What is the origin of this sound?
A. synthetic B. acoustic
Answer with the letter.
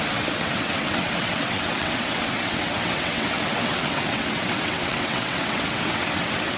A